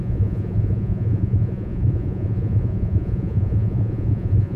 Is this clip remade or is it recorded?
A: remade